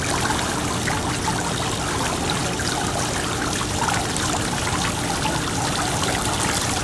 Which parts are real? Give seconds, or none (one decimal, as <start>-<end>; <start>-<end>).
0.0-6.8